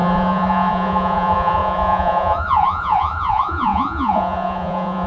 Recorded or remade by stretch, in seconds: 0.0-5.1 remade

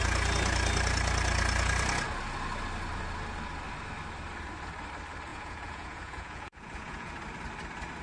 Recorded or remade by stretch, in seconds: 0.0-5.3 recorded; 5.3-7.1 remade; 7.1-8.0 recorded

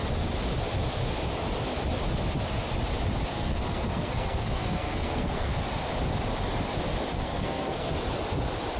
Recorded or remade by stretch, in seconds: 0.0-3.3 recorded; 3.3-5.6 remade; 5.6-7.1 recorded; 7.1-7.9 remade; 7.9-8.8 recorded

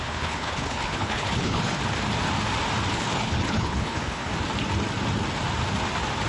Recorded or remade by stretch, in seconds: 0.0-1.8 remade; 1.8-2.9 recorded; 2.9-4.3 remade; 4.3-6.3 recorded

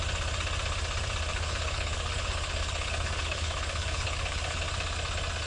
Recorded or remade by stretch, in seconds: 0.0-1.3 recorded; 1.3-4.6 remade; 4.6-5.5 recorded

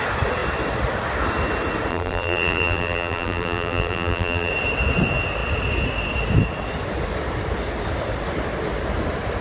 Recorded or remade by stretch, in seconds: 0.0-1.9 recorded; 1.9-4.5 remade; 4.5-9.4 recorded

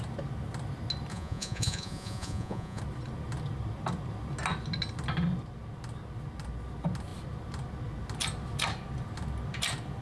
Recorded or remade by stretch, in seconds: 0.0-1.1 recorded; 1.1-2.8 remade; 2.8-10.0 recorded